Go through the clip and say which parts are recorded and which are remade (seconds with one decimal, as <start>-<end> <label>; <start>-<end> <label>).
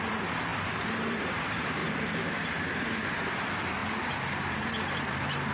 0.0-5.5 remade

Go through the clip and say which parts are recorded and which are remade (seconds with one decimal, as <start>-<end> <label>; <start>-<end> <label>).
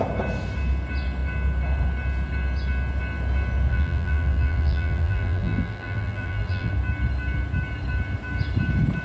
0.0-3.7 recorded; 3.7-6.7 remade; 6.7-9.0 recorded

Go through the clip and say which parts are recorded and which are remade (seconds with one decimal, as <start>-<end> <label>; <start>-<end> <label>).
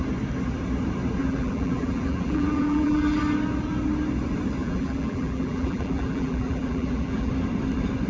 0.0-1.2 recorded; 1.2-3.2 remade; 3.2-4.6 recorded; 4.6-7.3 remade; 7.3-8.1 recorded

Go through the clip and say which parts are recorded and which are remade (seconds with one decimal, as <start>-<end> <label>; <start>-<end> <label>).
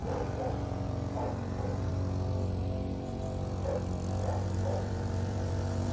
0.0-1.9 remade; 1.9-4.3 recorded; 4.3-5.9 remade